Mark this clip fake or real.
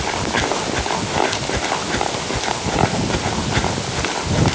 real